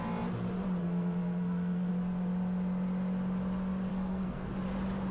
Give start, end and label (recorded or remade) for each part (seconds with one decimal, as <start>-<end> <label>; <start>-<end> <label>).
0.0-0.8 recorded; 0.8-1.9 remade; 1.9-3.9 recorded; 3.9-4.5 remade; 4.5-5.1 recorded